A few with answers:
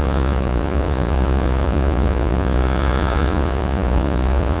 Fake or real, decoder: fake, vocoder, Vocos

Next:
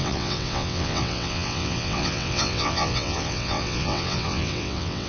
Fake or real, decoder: fake, vocoder, WaveNeXt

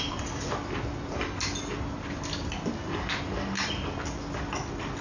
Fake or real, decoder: real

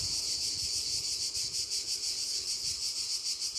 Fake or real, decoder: real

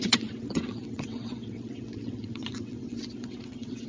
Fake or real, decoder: fake, vocoder, WaveNeXt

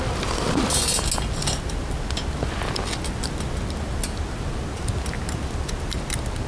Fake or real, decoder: real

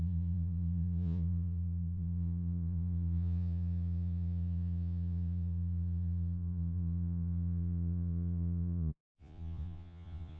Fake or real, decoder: fake, vocoder, Vocos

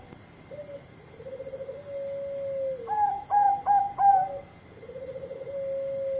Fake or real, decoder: real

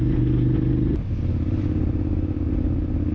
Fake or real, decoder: real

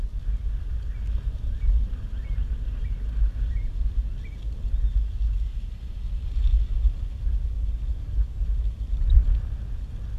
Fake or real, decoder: real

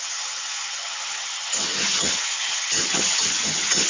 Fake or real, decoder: fake, vocoder, HiFi-GAN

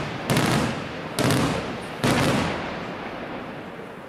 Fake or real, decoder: real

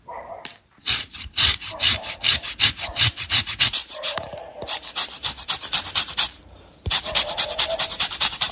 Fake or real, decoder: fake, vocoder, BigVGAN v2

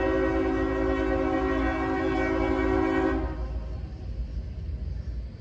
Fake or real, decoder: real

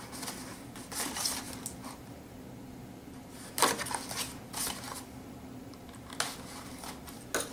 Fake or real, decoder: real